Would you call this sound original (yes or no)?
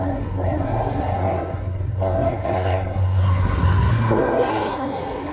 no